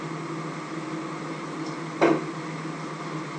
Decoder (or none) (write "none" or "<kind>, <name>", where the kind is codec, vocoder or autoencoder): none